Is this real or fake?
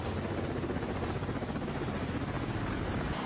real